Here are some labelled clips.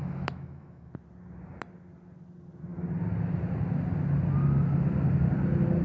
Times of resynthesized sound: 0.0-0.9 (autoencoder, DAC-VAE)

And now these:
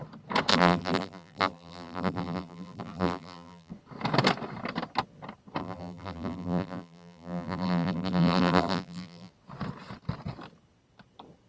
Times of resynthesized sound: 0.5-3.7 (vocoder, BigVGAN v2); 5.6-9.3

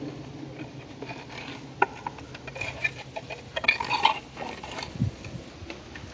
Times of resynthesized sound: 2.8-5.5 (vocoder, BigVGAN v2)